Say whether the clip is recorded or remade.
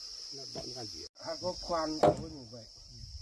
recorded